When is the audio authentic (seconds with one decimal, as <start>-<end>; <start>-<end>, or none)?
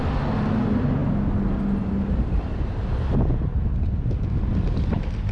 0.0-5.3